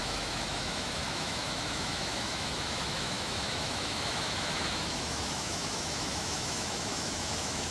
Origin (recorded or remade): remade